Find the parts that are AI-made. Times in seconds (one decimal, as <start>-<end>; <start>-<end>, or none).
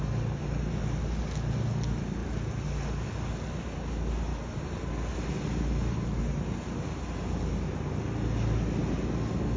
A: none